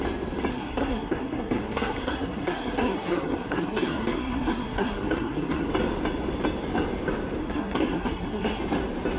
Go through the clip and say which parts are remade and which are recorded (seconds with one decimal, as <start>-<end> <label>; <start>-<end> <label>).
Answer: 0.0-0.5 recorded; 0.5-5.7 remade; 5.7-7.4 recorded; 7.4-8.6 remade; 8.6-9.2 recorded